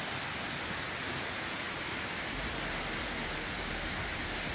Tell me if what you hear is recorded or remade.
recorded